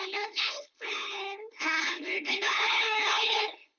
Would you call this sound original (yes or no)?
no